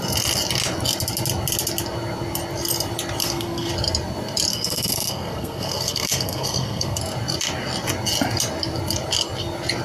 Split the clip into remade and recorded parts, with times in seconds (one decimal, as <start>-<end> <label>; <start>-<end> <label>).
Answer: 0.0-3.2 recorded; 3.2-3.7 remade; 3.7-4.5 recorded; 4.5-7.0 remade; 7.0-9.8 recorded